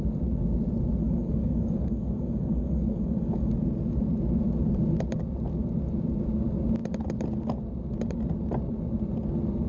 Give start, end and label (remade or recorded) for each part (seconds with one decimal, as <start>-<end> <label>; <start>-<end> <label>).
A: 0.0-1.0 recorded; 1.0-3.5 remade; 3.5-9.7 recorded

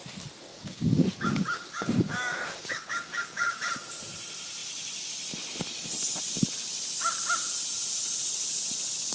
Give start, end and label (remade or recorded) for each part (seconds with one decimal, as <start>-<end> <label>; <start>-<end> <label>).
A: 0.0-0.5 recorded; 0.5-3.7 remade; 3.7-9.1 recorded

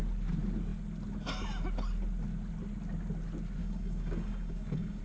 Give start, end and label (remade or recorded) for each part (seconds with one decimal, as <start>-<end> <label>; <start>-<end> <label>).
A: 0.0-3.6 recorded; 3.6-5.0 remade

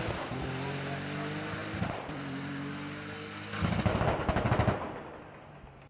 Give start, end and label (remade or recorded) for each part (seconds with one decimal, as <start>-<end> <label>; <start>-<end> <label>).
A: 0.0-5.9 recorded

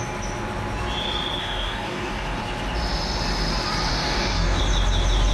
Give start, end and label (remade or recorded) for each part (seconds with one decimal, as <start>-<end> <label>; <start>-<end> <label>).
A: 0.0-1.4 recorded; 1.4-2.4 remade; 2.4-3.9 recorded; 3.9-4.6 remade; 4.6-5.3 recorded